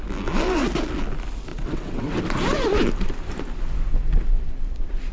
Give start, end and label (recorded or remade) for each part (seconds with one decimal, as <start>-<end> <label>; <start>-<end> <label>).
0.0-1.5 recorded; 1.5-2.2 remade; 2.2-5.1 recorded